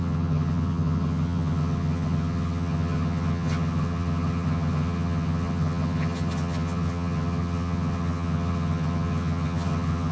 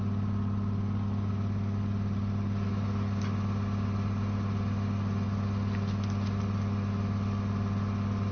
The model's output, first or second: first